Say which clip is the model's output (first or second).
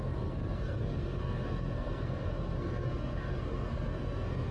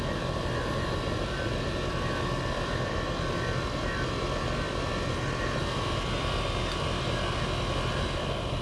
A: first